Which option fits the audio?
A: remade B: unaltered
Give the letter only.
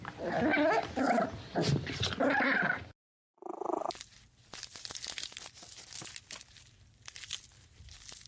B